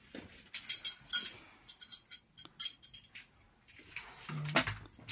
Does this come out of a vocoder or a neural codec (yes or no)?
no